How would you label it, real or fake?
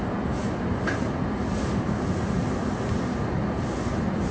real